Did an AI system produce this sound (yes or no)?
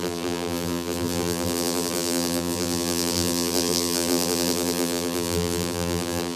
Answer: yes